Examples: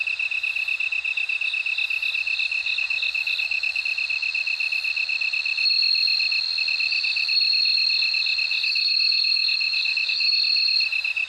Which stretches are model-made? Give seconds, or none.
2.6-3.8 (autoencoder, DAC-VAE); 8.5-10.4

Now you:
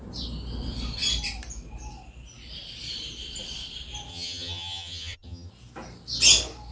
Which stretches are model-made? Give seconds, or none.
4.1-5.5 (vocoder, HiFi-GAN)

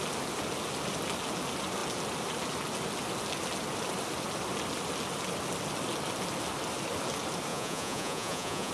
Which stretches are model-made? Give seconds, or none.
7.5-8.7 (vocoder, Vocos)

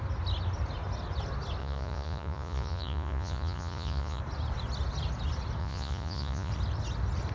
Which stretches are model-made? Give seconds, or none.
1.6-4.2 (vocoder, Vocos); 5.6-6.5

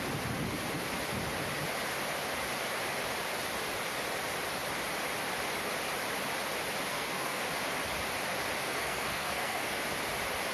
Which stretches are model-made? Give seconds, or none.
6.9-7.5 (codec, SNAC); 8.6-9.8

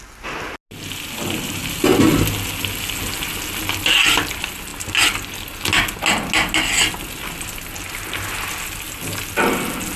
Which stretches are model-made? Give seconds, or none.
none

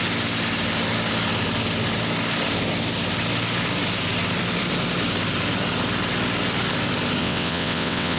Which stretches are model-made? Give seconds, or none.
7.2-8.2 (vocoder, WaveNeXt)

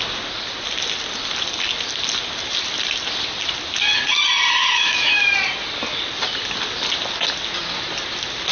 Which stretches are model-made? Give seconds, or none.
4.6-5.2 (autoencoder, DAC-VAE)